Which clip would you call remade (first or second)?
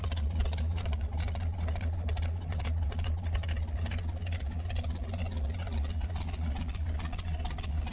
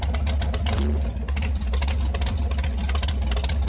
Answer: first